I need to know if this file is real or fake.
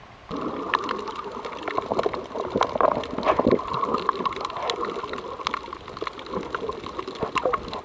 real